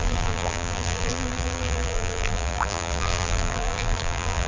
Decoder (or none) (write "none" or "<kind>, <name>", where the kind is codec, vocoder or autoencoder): vocoder, BigVGAN v2